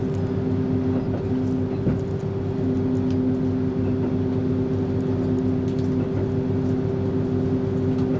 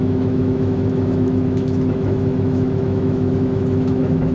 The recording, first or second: first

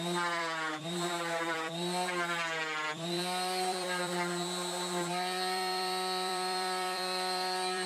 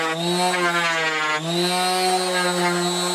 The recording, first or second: second